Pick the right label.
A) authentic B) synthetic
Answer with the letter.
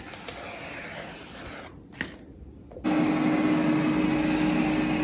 A